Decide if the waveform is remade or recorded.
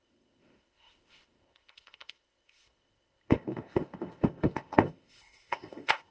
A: remade